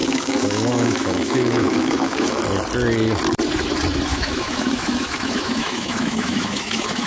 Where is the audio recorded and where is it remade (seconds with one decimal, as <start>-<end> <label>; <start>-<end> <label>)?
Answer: 0.0-2.4 remade; 2.4-4.1 recorded; 4.1-7.1 remade